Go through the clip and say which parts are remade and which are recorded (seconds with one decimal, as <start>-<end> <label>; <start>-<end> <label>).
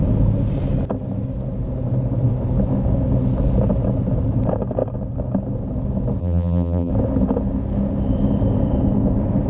0.0-6.2 recorded; 6.2-6.9 remade; 6.9-9.5 recorded